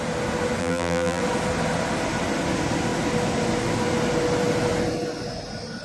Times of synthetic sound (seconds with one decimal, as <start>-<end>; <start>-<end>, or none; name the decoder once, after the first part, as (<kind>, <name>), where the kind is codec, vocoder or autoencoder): 0.6-1.2 (vocoder, BigVGAN v2)